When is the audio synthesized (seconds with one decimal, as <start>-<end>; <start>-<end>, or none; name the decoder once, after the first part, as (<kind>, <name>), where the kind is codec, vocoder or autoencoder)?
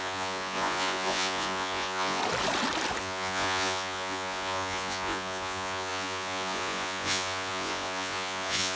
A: 0.0-2.2 (vocoder, Vocos); 3.0-8.8